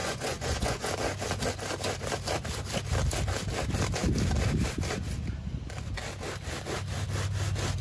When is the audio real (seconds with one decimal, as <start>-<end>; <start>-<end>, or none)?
0.9-7.8